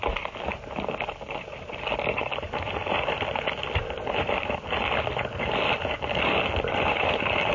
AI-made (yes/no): no